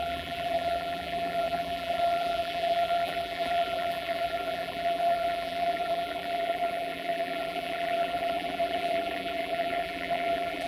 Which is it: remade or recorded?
remade